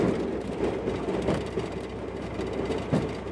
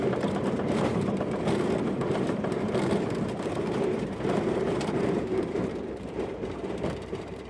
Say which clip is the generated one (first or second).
second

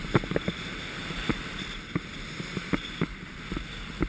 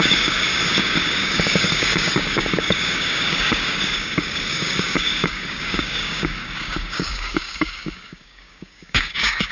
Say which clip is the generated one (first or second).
second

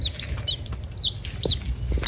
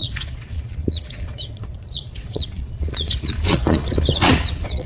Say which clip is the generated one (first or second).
second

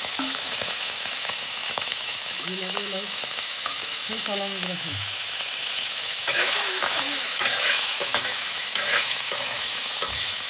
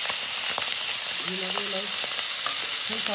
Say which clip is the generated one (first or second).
first